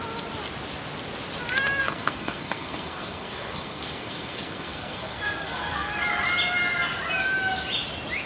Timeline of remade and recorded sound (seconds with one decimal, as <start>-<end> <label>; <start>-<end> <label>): 0.0-1.8 recorded; 1.8-5.9 remade; 5.9-8.3 recorded